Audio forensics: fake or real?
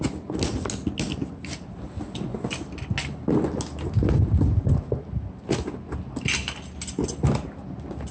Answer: real